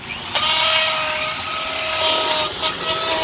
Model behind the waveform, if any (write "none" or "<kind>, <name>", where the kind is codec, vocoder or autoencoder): none